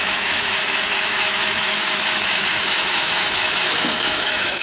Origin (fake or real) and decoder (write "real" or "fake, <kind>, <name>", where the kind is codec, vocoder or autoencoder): fake, autoencoder, DAC-VAE